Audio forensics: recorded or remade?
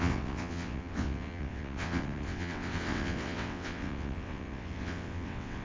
remade